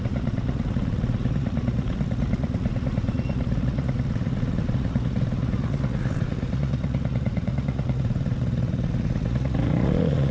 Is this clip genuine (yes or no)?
no